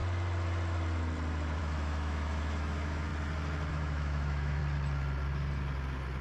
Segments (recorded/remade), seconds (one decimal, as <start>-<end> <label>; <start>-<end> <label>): 0.0-1.6 recorded; 1.6-3.1 remade; 3.1-3.7 recorded; 3.7-4.6 remade; 4.6-6.2 recorded